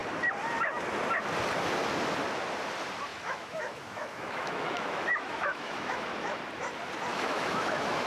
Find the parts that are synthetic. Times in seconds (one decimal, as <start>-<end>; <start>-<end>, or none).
3.1-6.4; 7.1-8.1